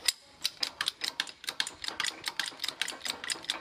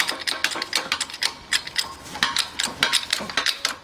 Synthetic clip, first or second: first